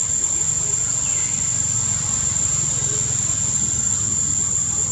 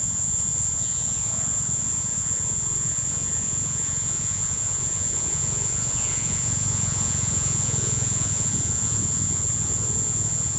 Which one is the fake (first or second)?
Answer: second